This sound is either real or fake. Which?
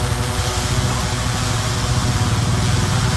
real